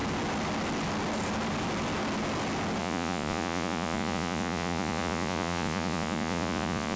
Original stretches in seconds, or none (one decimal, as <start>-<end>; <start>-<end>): 0.0-2.8